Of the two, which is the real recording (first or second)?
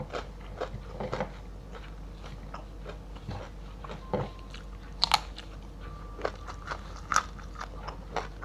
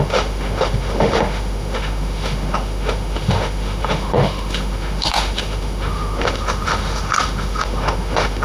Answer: first